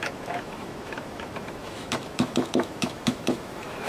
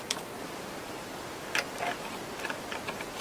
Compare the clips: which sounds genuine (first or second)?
second